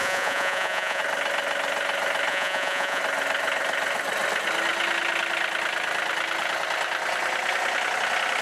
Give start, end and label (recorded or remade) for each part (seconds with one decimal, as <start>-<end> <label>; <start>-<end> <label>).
0.0-1.0 remade; 1.0-2.3 recorded; 2.3-3.0 remade; 3.0-8.4 recorded